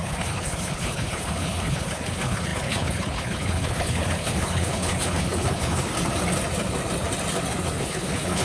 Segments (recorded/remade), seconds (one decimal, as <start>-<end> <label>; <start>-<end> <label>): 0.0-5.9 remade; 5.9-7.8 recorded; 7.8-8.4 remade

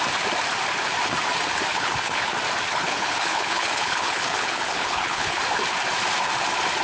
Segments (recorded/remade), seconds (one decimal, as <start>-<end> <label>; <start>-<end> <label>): 0.0-1.7 recorded; 1.7-2.3 remade; 2.3-2.7 recorded; 2.7-5.4 remade; 5.4-6.8 recorded

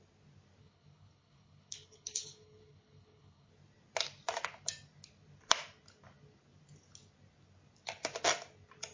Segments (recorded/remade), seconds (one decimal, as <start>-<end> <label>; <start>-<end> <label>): 0.0-0.6 recorded; 0.6-3.5 remade; 3.5-8.9 recorded

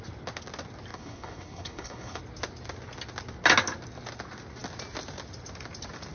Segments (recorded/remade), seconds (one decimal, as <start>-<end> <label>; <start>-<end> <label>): 0.0-0.9 recorded; 0.9-2.2 remade; 2.2-6.1 recorded

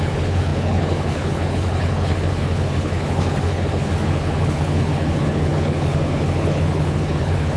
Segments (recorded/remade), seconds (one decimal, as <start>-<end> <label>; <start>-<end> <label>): 0.0-7.6 remade

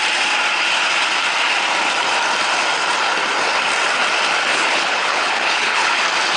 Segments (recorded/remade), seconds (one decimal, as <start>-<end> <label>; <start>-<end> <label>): 0.0-4.5 recorded; 4.5-6.0 remade; 6.0-6.4 recorded

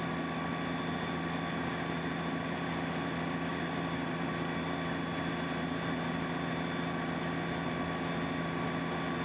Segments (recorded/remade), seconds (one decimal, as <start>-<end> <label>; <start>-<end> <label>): 0.0-9.2 recorded